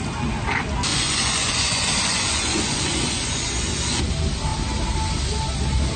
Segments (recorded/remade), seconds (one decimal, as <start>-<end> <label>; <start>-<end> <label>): 0.0-0.9 recorded; 0.9-4.1 remade; 4.1-6.0 recorded